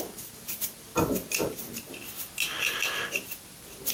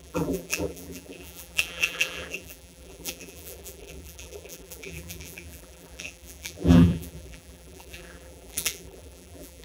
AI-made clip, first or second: second